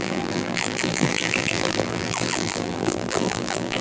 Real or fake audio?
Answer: fake